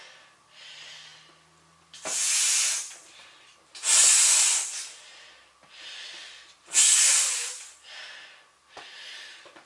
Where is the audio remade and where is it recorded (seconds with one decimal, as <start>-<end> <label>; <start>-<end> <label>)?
0.0-9.7 recorded